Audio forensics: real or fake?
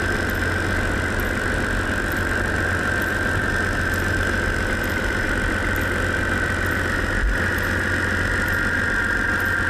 real